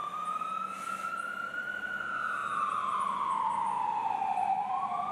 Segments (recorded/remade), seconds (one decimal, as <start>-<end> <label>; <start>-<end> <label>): 0.0-4.0 recorded; 4.0-4.6 remade; 4.6-5.1 recorded